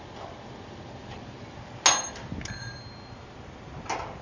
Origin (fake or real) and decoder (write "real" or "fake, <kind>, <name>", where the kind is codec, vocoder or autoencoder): real